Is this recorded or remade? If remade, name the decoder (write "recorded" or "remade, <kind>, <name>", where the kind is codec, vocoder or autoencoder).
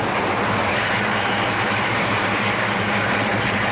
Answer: remade, vocoder, BigVGAN v2